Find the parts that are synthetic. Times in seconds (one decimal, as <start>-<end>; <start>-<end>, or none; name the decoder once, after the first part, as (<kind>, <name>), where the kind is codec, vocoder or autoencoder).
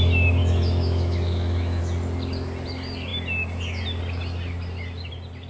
0.4-1.8 (autoencoder, DAC-VAE)